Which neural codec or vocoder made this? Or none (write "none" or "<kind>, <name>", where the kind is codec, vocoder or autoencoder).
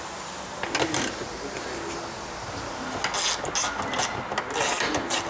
none